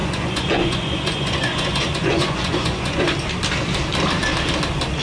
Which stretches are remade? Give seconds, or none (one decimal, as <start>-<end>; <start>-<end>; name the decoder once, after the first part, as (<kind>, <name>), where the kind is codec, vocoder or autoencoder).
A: 0.0-3.0 (vocoder, Vocos)